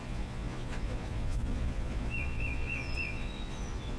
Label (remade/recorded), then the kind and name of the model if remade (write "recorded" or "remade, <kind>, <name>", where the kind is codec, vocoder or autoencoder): remade, vocoder, Vocos